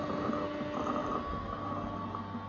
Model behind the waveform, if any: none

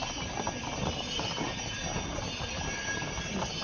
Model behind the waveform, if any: none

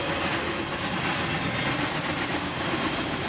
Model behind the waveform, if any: none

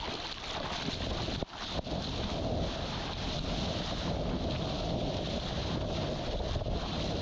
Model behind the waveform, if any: none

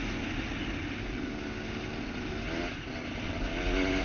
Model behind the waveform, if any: none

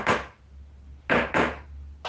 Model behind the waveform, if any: none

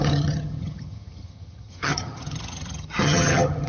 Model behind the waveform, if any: vocoder, HiFi-GAN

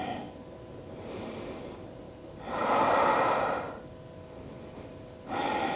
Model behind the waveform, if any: none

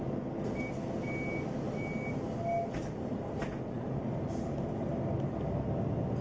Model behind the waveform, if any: none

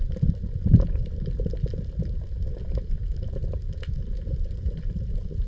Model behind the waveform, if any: none